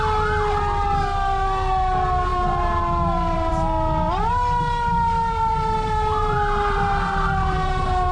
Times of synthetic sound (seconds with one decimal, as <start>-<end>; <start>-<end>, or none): 2.3-3.5; 4.9-8.1